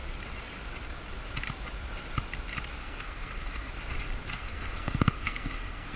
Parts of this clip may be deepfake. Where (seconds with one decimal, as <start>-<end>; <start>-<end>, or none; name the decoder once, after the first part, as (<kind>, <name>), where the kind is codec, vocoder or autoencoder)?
2.8-3.7 (codec, SNAC); 4.3-6.0